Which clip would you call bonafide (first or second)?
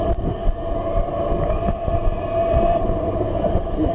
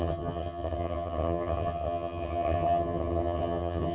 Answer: first